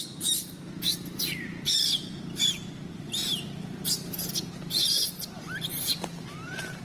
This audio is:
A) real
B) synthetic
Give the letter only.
B